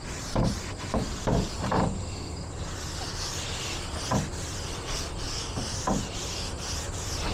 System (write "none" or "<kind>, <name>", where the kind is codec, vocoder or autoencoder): none